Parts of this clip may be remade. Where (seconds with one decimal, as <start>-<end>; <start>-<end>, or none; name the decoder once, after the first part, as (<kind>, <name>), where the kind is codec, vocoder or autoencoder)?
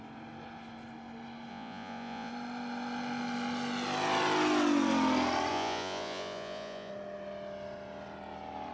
1.5-2.3 (vocoder, Vocos); 5.5-6.9